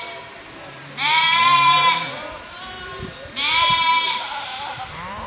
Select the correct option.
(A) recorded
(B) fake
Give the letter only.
B